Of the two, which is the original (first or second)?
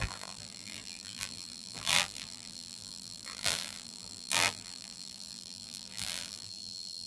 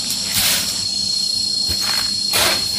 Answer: second